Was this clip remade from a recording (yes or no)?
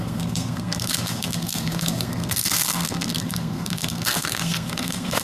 yes